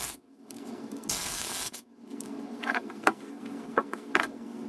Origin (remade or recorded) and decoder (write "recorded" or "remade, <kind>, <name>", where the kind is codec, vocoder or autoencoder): remade, codec, SNAC